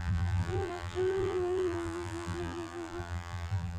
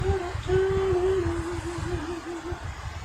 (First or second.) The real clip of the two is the second